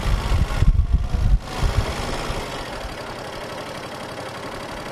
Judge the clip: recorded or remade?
recorded